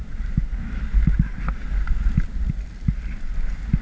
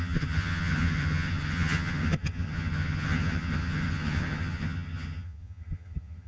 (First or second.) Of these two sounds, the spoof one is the second